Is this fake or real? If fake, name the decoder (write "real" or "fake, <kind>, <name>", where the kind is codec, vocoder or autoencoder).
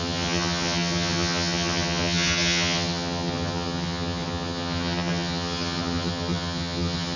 fake, vocoder, HiFi-GAN